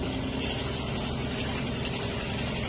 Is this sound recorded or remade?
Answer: recorded